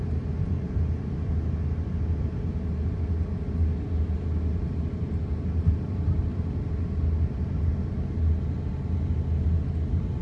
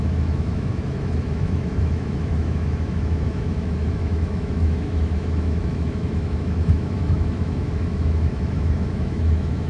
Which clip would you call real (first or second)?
first